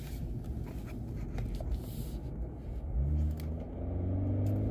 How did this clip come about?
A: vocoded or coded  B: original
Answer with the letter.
B